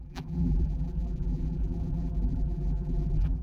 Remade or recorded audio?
remade